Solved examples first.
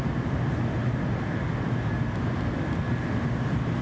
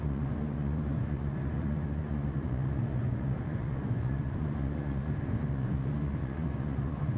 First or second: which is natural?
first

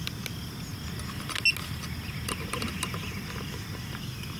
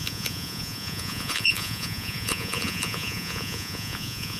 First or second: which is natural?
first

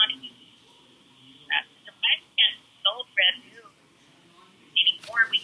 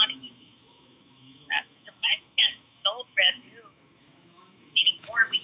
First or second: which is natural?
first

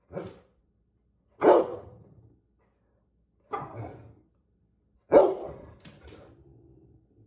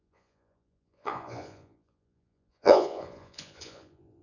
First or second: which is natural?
first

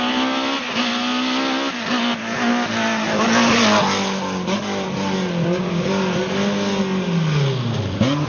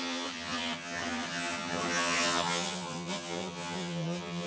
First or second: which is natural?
first